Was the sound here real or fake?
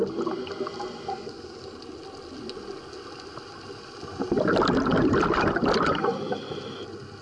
real